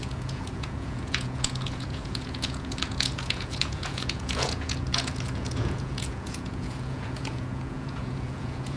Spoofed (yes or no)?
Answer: yes